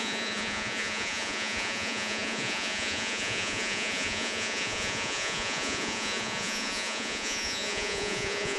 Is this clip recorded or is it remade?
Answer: remade